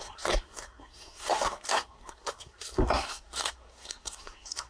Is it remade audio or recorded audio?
remade